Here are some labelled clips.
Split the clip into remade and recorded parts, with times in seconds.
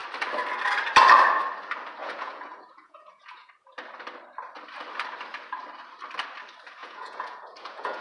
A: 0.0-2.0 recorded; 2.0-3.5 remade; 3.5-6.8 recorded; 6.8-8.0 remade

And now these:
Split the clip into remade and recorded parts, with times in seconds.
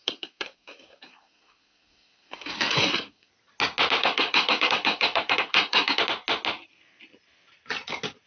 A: 0.0-3.3 remade; 3.3-4.0 recorded; 4.0-6.0 remade; 6.0-8.3 recorded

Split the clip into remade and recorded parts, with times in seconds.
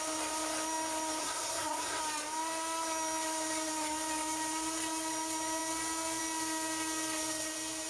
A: 0.0-1.2 recorded; 1.2-2.0 remade; 2.0-7.9 recorded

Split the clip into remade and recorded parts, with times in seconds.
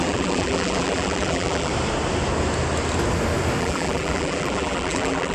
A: 0.0-1.7 remade; 1.7-3.6 recorded; 3.6-5.3 remade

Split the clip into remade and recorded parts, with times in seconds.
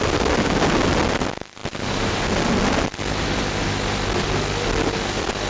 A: 0.0-5.5 recorded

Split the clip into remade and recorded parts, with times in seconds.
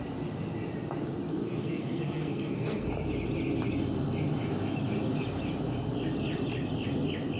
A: 0.0-1.3 recorded; 1.3-2.9 remade; 2.9-7.4 recorded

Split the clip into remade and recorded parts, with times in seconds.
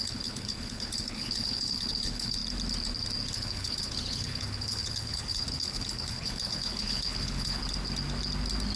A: 0.0-2.4 remade; 2.4-3.3 recorded; 3.3-7.6 remade; 7.6-8.8 recorded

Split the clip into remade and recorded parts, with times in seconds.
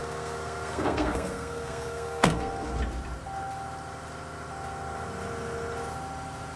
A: 0.0-2.7 remade; 2.7-6.6 recorded